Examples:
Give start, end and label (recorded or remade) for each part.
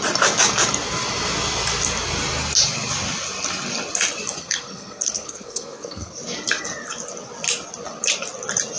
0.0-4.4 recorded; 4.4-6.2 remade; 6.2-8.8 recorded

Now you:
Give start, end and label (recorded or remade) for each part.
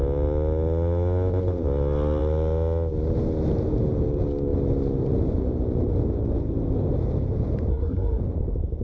0.0-7.7 recorded; 7.7-8.2 remade; 8.2-8.8 recorded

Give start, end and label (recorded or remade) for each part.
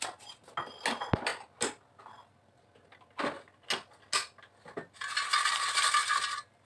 0.0-6.7 recorded